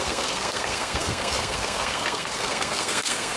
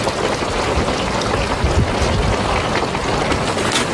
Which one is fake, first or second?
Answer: first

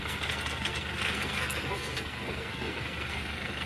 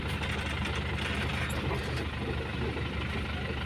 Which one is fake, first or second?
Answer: first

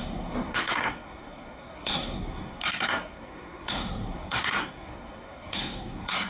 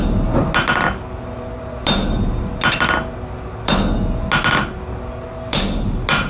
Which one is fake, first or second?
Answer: first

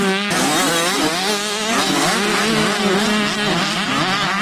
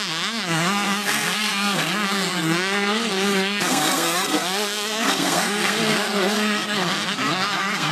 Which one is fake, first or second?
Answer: second